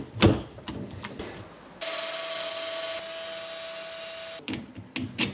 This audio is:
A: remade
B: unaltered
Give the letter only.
B